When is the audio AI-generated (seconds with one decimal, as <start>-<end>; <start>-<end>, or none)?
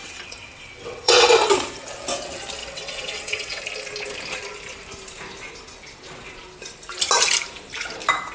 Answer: 0.0-1.3; 2.6-3.6